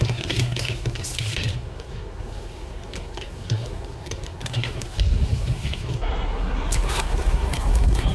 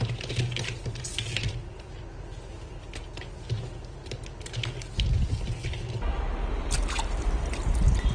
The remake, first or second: first